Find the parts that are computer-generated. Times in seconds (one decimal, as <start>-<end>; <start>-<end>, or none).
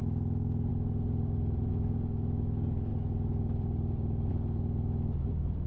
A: 0.0-0.7; 1.7-2.9; 4.3-5.7